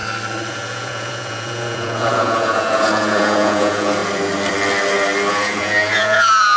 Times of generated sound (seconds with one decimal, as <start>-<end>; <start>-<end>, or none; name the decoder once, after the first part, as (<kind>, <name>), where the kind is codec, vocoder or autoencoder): 0.5-4.0 (vocoder, Vocos); 5.3-6.6